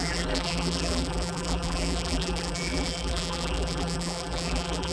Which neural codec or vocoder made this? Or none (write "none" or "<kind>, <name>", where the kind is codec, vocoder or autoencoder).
vocoder, BigVGAN v2